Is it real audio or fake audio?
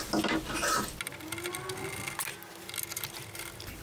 real